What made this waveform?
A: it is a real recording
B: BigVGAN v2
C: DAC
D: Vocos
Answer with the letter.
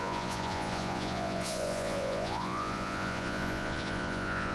D